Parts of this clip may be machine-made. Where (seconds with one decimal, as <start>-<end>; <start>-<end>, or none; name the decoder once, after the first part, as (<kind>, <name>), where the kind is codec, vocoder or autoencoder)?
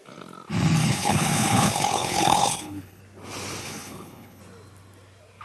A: 0.8-3.0 (codec, HILCodec); 3.6-4.4